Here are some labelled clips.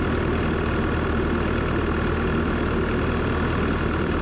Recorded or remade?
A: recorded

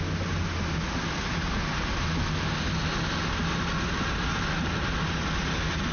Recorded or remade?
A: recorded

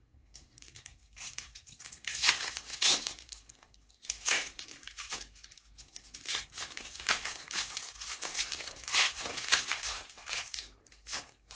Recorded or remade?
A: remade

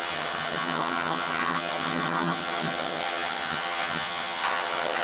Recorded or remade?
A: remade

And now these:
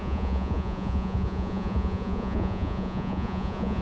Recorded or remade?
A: remade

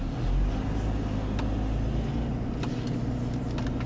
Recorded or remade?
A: recorded